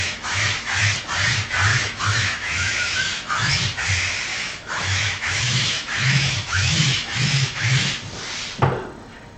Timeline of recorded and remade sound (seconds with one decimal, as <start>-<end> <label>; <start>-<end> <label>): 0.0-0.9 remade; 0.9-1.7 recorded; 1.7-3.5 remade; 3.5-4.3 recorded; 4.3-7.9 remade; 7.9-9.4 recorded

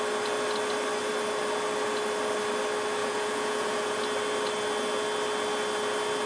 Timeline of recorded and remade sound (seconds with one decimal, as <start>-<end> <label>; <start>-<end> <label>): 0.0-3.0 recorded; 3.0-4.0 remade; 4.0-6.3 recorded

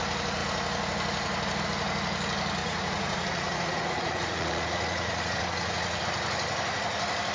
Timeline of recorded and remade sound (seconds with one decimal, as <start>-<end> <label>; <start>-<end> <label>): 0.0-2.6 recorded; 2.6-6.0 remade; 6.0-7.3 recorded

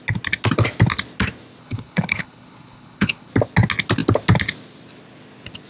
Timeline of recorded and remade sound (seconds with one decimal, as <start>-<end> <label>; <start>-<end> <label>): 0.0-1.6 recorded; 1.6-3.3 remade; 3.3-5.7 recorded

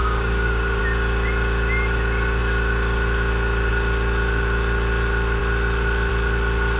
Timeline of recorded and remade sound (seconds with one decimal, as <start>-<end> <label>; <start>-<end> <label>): 0.0-0.8 remade; 0.8-6.8 recorded

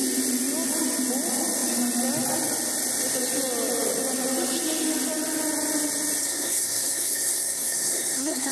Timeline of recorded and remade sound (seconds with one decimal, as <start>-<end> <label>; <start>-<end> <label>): 0.0-6.2 recorded; 6.2-8.5 remade